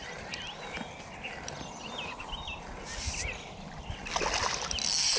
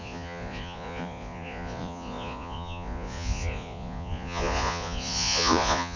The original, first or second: first